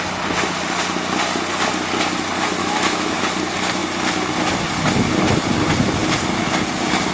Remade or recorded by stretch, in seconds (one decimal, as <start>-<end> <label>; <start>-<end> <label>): 0.0-2.6 recorded; 2.6-3.2 remade; 3.2-7.1 recorded